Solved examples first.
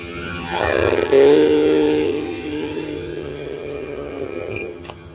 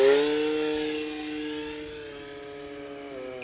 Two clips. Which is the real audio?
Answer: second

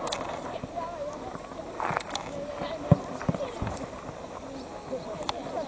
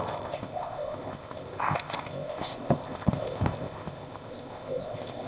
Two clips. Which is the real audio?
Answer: first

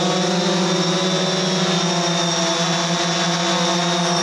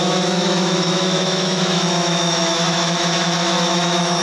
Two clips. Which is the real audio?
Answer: first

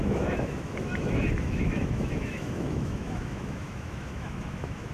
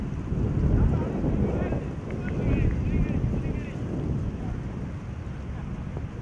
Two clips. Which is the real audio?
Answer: second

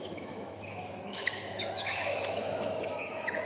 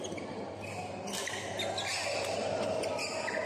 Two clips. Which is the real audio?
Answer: second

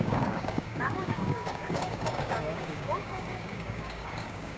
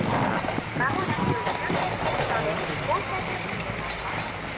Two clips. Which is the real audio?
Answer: second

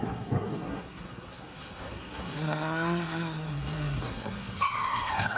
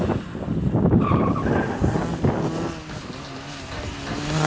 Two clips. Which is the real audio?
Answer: second